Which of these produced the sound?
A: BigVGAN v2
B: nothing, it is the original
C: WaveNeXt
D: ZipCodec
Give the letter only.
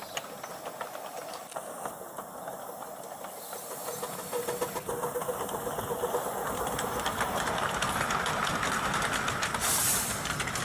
B